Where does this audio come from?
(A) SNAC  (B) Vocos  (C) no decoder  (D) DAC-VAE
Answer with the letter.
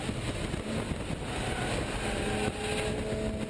C